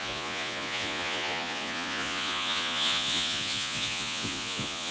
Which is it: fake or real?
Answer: fake